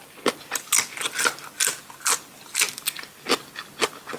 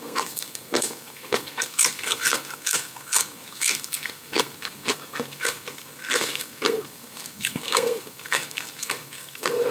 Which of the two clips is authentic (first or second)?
first